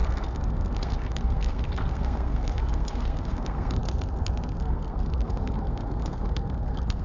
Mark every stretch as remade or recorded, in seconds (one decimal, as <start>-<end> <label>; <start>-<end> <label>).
0.0-3.8 remade; 3.8-4.6 recorded; 4.6-7.0 remade